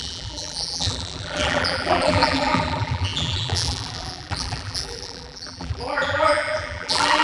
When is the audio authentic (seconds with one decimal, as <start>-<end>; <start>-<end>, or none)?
none